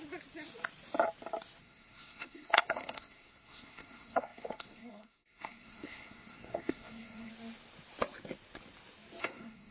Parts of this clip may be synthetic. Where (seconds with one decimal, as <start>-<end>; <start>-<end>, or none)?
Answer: 1.6-7.3; 9.2-9.7